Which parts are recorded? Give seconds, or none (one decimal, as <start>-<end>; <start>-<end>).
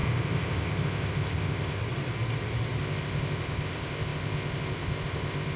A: 1.8-2.8